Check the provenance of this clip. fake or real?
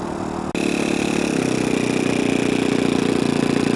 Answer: real